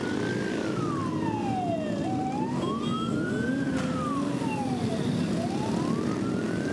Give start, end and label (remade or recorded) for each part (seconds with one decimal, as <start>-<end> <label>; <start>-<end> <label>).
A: 0.0-6.7 recorded